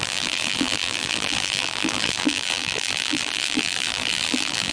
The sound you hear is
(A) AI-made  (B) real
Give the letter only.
A